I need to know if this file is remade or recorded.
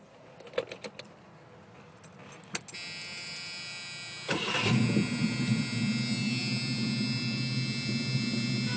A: recorded